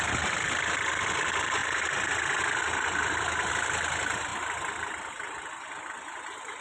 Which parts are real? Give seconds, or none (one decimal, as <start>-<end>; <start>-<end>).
0.0-6.6